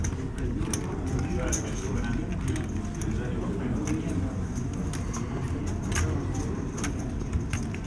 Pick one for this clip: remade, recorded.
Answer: recorded